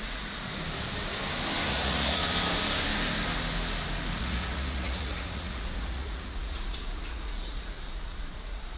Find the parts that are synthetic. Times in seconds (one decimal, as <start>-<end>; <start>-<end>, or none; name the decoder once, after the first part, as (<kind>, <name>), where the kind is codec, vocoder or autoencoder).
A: 0.0-0.5 (vocoder, Vocos); 1.7-2.2; 4.2-8.8